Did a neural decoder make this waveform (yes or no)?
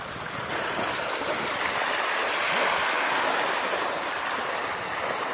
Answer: no